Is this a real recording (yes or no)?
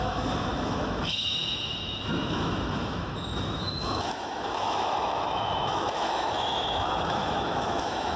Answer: no